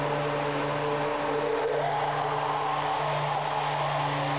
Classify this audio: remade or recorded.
recorded